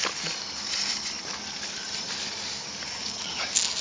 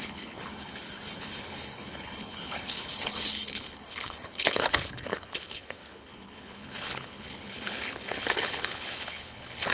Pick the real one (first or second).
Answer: first